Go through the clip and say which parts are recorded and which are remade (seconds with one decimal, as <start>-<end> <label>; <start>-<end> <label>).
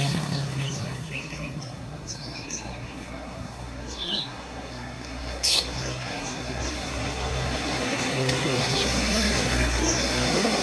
0.0-10.6 remade